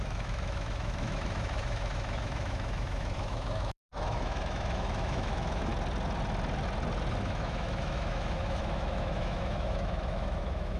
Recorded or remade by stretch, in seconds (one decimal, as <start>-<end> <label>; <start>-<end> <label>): 0.0-5.7 remade; 5.7-7.2 recorded; 7.2-10.8 remade